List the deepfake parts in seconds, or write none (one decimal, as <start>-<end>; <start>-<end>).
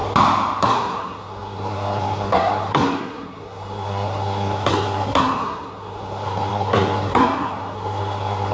0.6-8.5